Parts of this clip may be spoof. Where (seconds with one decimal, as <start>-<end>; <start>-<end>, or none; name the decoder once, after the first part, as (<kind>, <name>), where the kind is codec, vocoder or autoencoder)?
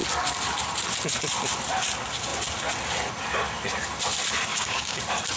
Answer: 4.5-5.0 (codec, DAC)